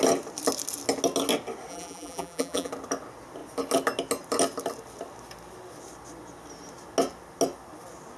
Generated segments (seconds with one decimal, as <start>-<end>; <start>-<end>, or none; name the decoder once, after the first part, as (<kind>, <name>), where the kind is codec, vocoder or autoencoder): 1.7-2.7 (vocoder, BigVGAN v2)